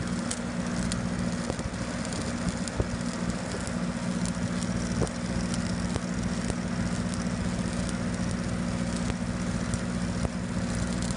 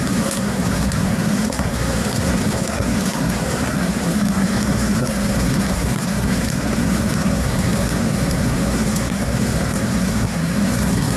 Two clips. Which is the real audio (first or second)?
first